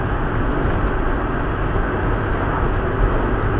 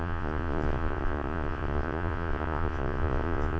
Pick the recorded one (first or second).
first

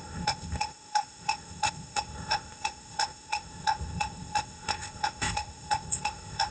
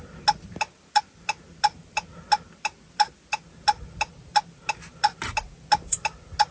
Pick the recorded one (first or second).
second